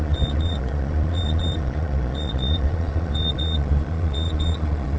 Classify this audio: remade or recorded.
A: remade